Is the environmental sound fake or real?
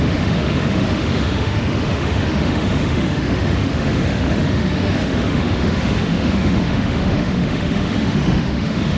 fake